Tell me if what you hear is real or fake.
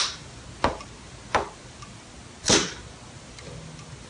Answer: real